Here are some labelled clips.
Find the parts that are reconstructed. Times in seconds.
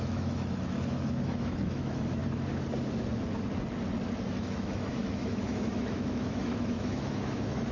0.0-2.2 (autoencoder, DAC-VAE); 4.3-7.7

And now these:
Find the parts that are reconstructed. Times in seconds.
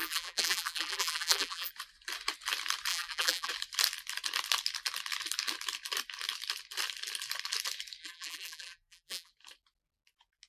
0.0-1.7 (vocoder, BigVGAN v2); 2.9-3.5; 8.0-9.3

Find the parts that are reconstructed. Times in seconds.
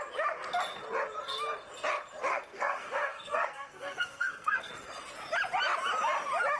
2.3-4.7 (codec, SNAC)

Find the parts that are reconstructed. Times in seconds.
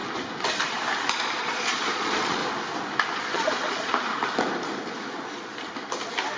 1.4-2.4 (vocoder, Vocos); 3.2-3.9; 5.1-5.5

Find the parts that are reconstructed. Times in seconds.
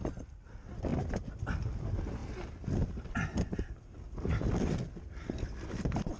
none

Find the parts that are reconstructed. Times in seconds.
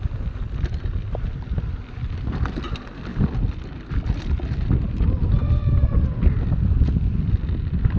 none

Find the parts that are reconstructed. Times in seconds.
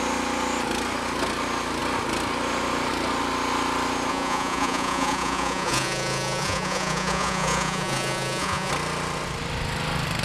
4.1-8.7 (vocoder, Vocos)